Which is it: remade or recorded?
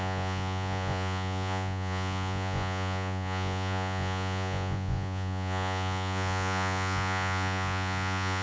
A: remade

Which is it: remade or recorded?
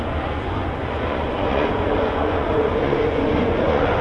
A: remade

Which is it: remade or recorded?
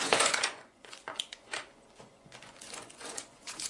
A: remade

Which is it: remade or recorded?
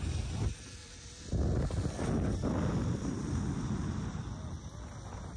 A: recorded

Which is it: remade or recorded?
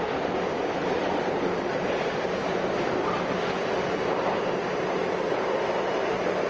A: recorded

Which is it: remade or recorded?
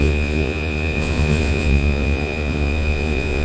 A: remade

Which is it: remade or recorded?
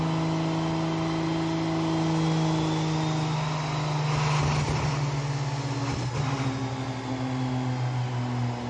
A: recorded